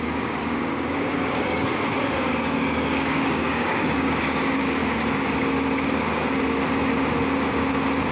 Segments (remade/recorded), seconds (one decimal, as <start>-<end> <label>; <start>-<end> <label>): 0.0-4.8 remade; 4.8-8.1 recorded